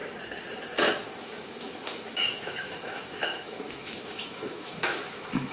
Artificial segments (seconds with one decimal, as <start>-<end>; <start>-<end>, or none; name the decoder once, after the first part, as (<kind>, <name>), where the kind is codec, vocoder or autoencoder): 1.2-5.5 (autoencoder, DAC-VAE)